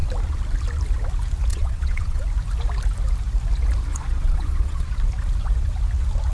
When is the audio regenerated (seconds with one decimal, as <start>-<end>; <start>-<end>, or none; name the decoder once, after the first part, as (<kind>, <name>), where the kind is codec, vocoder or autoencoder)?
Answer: 1.5-2.2 (vocoder, Vocos); 3.9-4.9